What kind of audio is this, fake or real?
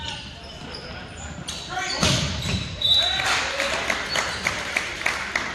fake